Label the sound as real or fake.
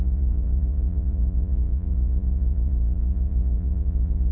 fake